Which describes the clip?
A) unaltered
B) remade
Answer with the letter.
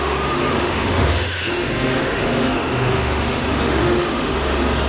B